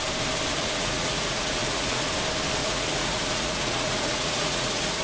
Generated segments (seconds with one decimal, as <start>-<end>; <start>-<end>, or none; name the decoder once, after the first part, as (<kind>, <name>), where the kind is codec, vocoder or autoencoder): 0.5-2.1 (vocoder, Vocos); 2.6-5.0